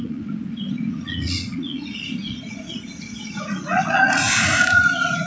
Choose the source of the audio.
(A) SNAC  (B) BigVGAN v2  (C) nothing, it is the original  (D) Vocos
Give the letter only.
D